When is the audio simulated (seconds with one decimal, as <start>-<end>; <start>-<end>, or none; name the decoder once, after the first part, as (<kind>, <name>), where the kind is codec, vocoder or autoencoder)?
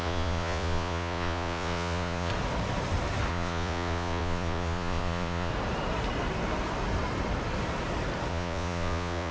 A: 0.0-2.3 (vocoder, Vocos); 3.3-5.5; 8.3-9.3